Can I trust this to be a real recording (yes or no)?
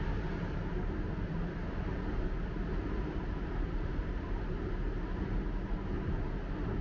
yes